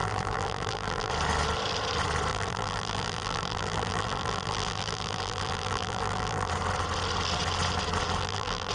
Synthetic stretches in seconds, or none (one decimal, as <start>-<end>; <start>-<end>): 0.0-1.1; 2.3-6.5; 8.2-8.7